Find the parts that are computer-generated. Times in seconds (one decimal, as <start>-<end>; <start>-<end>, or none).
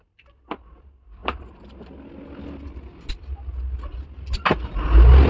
none